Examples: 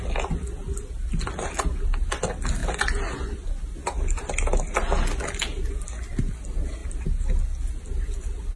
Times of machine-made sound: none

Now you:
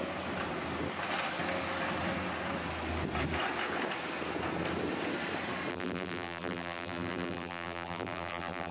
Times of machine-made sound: 5.7-8.7 (vocoder, BigVGAN v2)

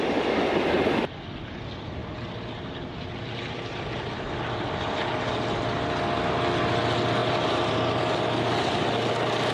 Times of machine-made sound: 7.2-8.0 (vocoder, BigVGAN v2)

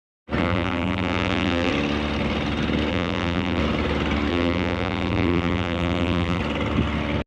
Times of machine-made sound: 0.4-1.7 (vocoder, BigVGAN v2); 2.9-3.6; 4.3-6.4